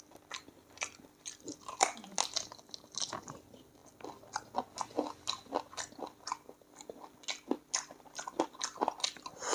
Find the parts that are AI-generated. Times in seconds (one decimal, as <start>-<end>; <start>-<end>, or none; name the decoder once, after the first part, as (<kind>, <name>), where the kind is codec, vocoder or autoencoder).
none